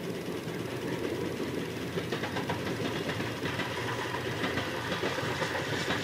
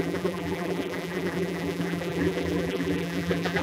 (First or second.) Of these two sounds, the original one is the first